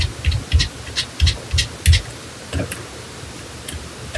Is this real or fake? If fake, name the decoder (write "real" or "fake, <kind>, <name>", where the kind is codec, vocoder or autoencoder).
real